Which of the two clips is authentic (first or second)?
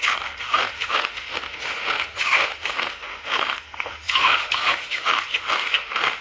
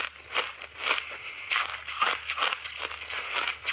second